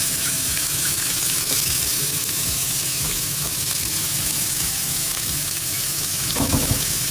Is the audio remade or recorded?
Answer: remade